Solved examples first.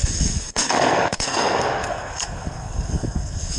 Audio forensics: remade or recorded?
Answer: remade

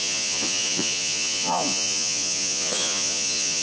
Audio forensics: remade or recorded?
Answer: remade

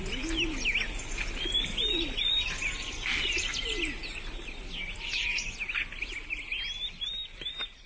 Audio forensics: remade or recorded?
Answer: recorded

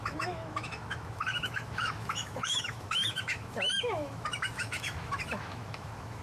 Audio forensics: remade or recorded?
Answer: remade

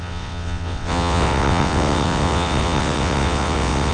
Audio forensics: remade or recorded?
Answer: remade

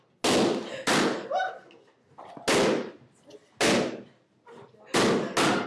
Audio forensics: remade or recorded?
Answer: recorded